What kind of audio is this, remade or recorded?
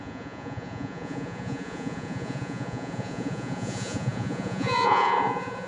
remade